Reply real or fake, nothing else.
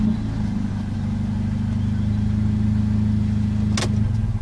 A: real